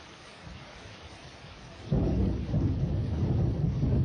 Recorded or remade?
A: remade